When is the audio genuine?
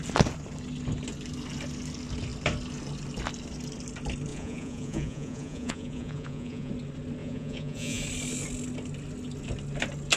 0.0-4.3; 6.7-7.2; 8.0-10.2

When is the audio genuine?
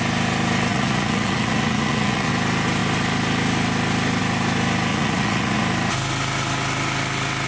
0.0-0.7; 2.3-4.9; 5.6-7.5